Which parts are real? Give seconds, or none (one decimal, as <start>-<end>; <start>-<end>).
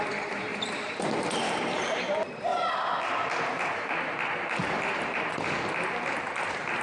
0.0-0.5; 3.9-4.6; 5.4-6.8